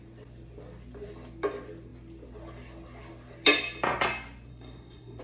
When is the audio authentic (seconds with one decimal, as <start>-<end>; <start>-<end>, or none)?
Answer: 0.0-4.5